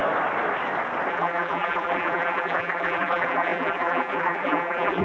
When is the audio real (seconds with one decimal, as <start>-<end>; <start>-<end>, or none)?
0.0-1.1